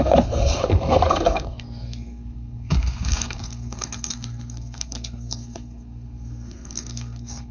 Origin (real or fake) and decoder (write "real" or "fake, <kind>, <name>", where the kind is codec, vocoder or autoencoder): fake, codec, SNAC